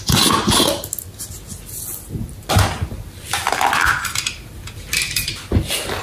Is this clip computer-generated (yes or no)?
no